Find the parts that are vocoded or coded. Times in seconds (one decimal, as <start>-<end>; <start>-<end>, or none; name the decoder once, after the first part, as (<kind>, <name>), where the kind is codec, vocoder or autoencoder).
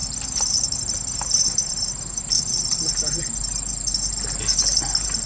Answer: none